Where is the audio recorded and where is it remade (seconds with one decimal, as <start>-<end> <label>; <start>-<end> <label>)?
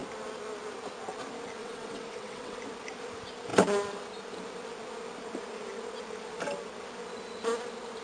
0.0-1.6 recorded; 1.6-2.6 remade; 2.6-8.0 recorded